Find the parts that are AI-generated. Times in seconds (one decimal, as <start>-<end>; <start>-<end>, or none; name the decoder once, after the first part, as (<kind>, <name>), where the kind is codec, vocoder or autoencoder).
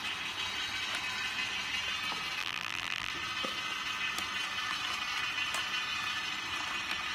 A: 2.4-3.1 (vocoder, BigVGAN v2)